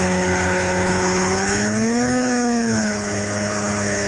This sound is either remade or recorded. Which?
remade